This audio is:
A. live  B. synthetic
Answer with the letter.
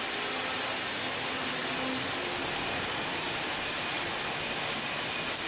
A